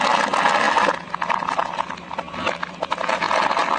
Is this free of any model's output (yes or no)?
yes